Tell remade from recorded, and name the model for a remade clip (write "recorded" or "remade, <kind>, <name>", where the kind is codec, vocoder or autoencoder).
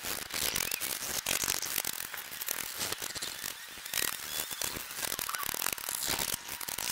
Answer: recorded